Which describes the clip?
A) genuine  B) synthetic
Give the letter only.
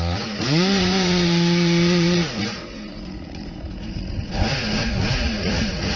B